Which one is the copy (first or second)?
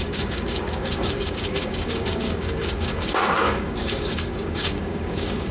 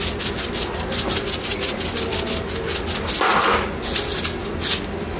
first